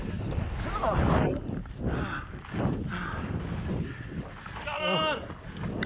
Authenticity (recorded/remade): recorded